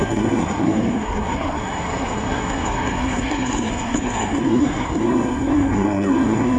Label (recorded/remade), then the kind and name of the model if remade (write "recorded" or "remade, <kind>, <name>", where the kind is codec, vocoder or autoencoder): remade, codec, SNAC